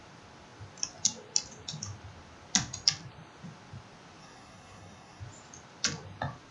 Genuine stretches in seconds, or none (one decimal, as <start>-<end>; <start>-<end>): 0.0-4.2; 5.2-6.5